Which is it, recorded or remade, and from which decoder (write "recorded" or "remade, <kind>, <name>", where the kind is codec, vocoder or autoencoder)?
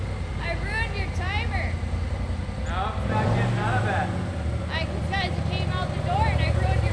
recorded